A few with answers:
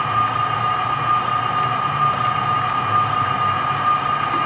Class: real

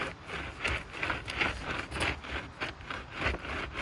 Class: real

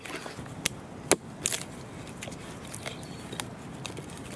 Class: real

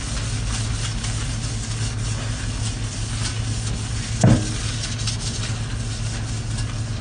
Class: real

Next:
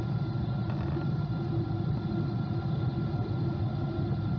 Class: real